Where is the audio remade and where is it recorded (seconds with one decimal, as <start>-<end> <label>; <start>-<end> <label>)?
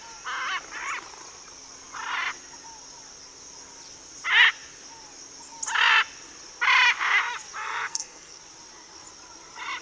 0.0-7.6 recorded; 7.6-8.4 remade; 8.4-9.8 recorded